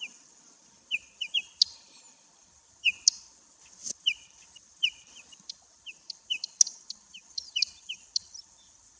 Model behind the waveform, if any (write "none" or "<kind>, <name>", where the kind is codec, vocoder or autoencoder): none